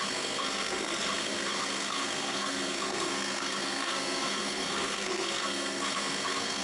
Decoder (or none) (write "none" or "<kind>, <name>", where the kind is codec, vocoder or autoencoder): codec, SNAC